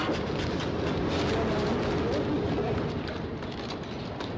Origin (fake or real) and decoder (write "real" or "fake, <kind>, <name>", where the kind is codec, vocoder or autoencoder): real